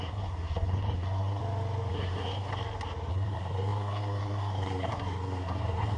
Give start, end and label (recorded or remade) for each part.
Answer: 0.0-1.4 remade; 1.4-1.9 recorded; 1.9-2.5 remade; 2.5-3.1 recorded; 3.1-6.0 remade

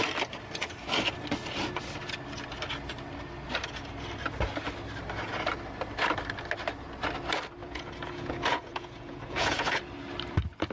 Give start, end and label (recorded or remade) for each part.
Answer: 0.0-7.6 recorded; 7.6-9.8 remade; 9.8-10.7 recorded

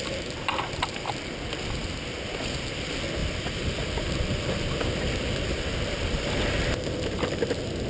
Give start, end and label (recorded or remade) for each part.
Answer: 0.0-3.2 recorded; 3.2-6.3 remade; 6.3-7.9 recorded

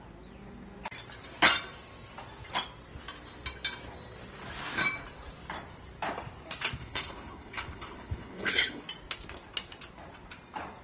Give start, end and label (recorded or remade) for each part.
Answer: 0.0-6.8 recorded; 6.8-8.8 remade; 8.8-10.8 recorded

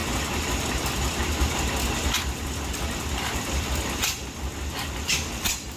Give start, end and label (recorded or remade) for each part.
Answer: 0.0-5.8 recorded

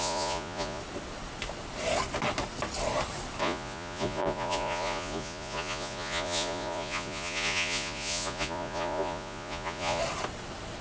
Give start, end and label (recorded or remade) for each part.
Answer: 0.0-0.8 remade; 0.8-3.4 recorded; 3.4-10.0 remade; 10.0-10.8 recorded